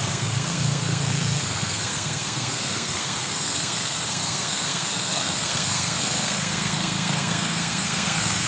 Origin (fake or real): fake